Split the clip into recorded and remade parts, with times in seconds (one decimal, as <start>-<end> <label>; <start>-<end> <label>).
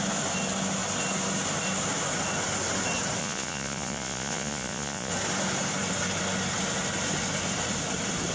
0.0-3.2 recorded; 3.2-5.1 remade; 5.1-8.3 recorded